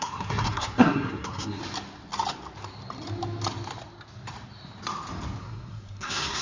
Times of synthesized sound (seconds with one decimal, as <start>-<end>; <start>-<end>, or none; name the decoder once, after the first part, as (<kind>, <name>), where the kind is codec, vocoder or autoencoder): 0.0-1.6 (codec, SNAC); 5.4-6.4